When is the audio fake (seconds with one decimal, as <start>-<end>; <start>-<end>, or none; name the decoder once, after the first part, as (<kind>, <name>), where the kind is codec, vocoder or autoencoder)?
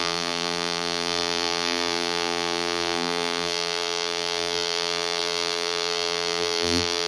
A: 0.0-7.1 (vocoder, BigVGAN v2)